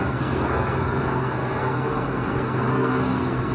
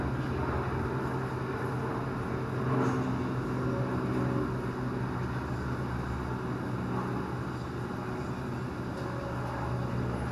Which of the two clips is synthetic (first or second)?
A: first